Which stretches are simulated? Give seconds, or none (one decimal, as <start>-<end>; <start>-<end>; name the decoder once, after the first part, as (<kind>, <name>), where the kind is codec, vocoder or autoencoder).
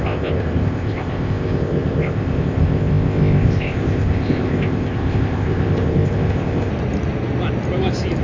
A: 0.0-6.7 (codec, ZipCodec)